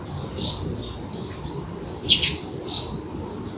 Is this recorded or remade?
recorded